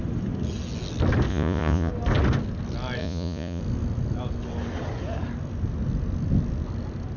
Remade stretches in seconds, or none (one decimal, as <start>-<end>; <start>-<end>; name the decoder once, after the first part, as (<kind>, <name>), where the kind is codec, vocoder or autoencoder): 1.3-1.9 (vocoder, Vocos); 3.0-3.6